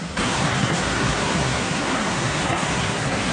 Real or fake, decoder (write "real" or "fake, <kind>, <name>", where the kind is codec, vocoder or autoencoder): fake, codec, SNAC